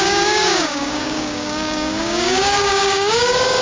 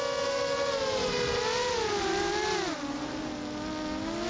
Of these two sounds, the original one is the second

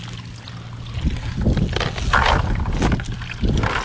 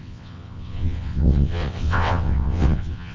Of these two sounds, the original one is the first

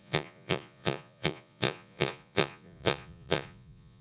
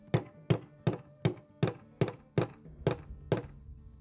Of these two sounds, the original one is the second